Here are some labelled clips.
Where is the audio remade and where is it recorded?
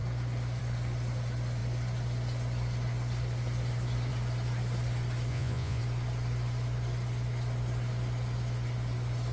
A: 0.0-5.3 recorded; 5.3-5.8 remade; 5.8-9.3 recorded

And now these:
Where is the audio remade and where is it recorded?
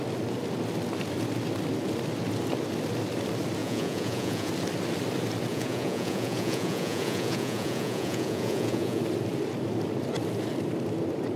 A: 0.0-3.6 recorded; 3.6-4.5 remade; 4.5-5.5 recorded; 5.5-9.0 remade; 9.0-11.4 recorded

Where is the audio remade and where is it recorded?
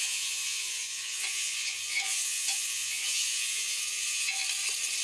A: 0.0-4.4 remade; 4.4-5.0 recorded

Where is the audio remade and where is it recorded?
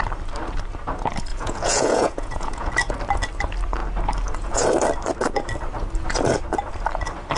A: 0.0-1.3 recorded; 1.3-2.7 remade; 2.7-7.4 recorded